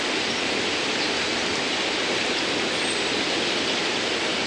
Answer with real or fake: real